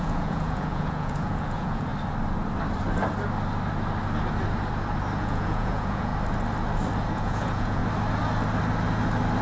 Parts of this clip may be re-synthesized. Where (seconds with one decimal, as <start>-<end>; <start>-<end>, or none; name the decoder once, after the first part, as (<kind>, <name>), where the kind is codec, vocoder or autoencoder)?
0.0-1.9 (vocoder, Vocos); 5.2-6.1; 7.1-7.8